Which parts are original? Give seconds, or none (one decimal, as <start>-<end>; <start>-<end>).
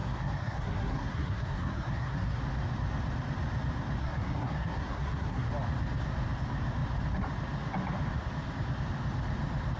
2.4-4.0; 5.5-9.8